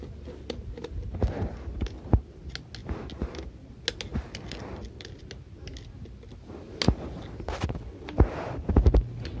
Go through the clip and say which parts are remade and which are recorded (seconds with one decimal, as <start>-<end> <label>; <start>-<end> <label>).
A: 0.0-1.5 recorded; 1.5-2.1 remade; 2.1-4.1 recorded; 4.1-5.2 remade; 5.2-9.4 recorded